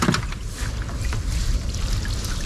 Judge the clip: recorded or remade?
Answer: recorded